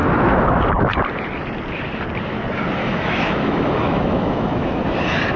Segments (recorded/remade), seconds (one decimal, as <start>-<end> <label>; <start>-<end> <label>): 0.0-2.8 recorded; 2.8-4.8 remade; 4.8-5.4 recorded